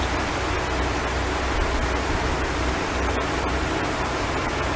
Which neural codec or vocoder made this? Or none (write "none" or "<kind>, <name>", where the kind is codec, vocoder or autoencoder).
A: none